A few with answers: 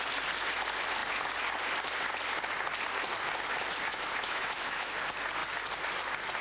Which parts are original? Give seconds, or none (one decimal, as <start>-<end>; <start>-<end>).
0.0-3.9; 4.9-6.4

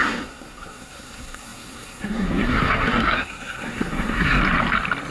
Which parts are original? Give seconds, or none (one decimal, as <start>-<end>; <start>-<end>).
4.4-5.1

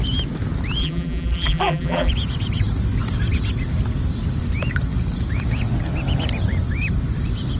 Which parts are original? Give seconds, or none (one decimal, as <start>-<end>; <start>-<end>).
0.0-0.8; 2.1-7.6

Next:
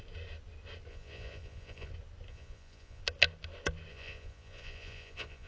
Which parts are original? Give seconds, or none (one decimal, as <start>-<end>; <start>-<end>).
0.0-0.9; 1.9-2.3; 3.0-3.9